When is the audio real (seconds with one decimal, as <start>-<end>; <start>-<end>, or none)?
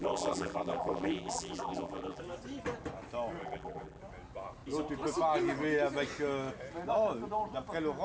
2.2-3.4; 4.0-8.0